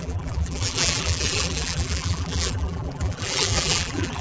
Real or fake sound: fake